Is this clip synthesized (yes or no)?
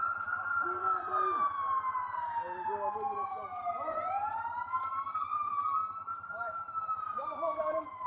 no